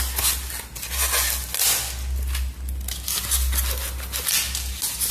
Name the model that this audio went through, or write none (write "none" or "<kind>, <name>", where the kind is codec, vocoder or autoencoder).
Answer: none